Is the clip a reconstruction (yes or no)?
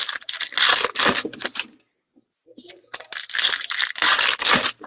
no